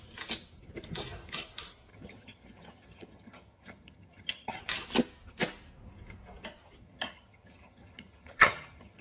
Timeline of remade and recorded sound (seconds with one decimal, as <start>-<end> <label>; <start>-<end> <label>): 0.0-1.9 recorded; 1.9-4.6 remade; 4.6-6.8 recorded; 6.8-9.0 remade